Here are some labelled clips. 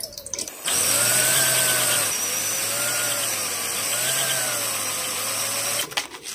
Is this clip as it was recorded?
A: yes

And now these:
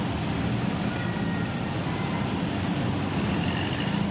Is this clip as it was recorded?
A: yes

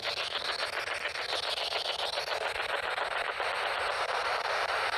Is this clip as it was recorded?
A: yes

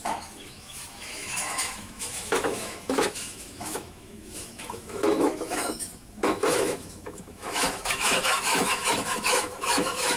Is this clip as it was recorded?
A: no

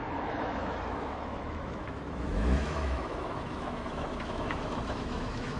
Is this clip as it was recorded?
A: no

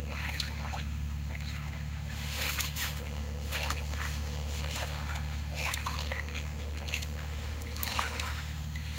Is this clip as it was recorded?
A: no